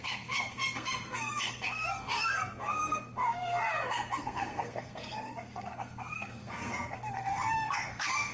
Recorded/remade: remade